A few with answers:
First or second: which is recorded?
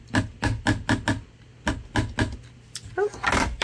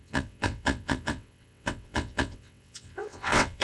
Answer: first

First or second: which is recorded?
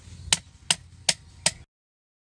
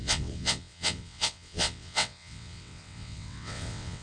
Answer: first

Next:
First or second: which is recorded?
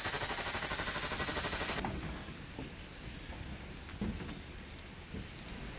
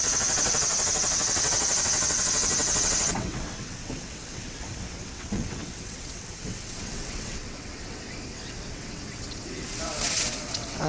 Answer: first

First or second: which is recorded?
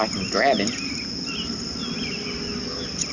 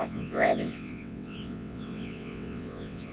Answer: first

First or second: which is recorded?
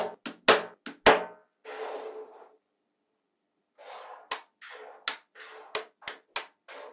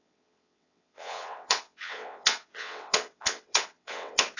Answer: first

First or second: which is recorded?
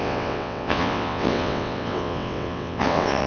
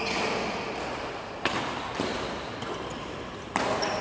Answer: second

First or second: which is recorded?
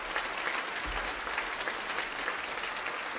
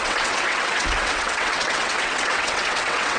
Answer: first